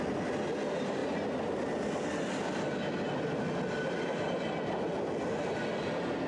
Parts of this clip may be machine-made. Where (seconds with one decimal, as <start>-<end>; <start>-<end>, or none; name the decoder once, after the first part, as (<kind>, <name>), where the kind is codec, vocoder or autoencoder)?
none